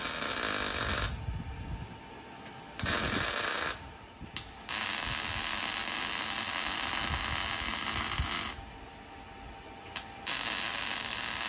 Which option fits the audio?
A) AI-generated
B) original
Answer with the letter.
B